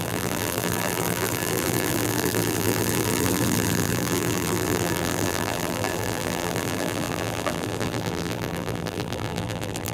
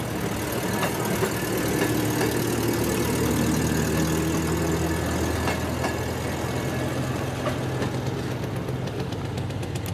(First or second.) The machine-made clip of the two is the first